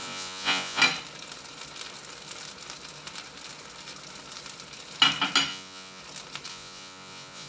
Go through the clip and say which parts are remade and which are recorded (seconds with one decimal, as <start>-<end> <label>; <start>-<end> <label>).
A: 0.0-0.8 remade; 0.8-5.5 recorded; 5.5-6.0 remade; 6.0-6.5 recorded; 6.5-7.5 remade